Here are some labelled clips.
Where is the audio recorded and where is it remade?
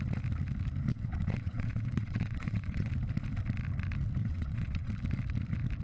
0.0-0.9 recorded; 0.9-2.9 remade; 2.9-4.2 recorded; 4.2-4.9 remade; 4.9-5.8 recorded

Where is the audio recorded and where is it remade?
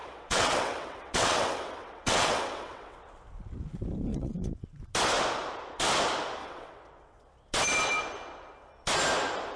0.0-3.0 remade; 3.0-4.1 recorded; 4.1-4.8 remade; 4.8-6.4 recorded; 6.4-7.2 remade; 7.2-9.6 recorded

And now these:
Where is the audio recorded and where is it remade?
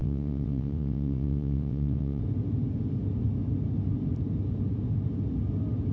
0.0-2.2 remade; 2.2-5.9 recorded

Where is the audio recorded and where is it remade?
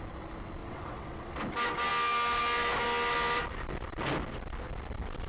0.0-0.6 recorded; 0.6-1.3 remade; 1.3-5.3 recorded